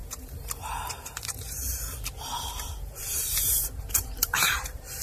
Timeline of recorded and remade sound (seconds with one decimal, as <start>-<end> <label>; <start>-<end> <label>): 0.0-5.0 remade